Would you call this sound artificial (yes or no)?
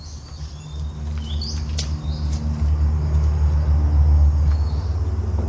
no